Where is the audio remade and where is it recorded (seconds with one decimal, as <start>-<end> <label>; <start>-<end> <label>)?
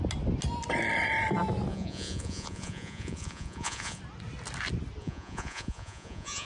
0.0-1.7 recorded; 1.7-4.0 remade; 4.0-5.0 recorded; 5.0-6.5 remade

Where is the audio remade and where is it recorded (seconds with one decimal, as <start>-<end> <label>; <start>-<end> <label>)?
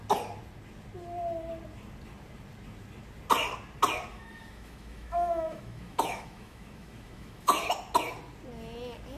0.0-4.1 recorded; 4.1-7.6 remade; 7.6-9.2 recorded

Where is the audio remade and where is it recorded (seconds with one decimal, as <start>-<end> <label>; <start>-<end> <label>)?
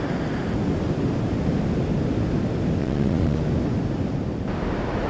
0.0-2.8 recorded; 2.8-3.4 remade; 3.4-5.1 recorded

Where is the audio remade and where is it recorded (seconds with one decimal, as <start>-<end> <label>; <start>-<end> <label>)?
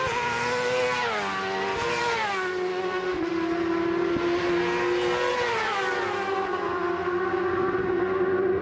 0.0-2.7 recorded; 2.7-3.3 remade; 3.3-8.6 recorded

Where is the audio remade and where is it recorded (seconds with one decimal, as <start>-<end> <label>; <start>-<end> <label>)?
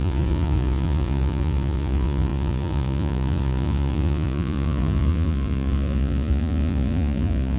0.0-7.6 remade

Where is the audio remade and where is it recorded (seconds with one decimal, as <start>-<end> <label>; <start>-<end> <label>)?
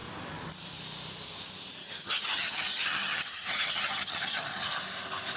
0.0-1.8 recorded; 1.8-4.8 remade; 4.8-5.4 recorded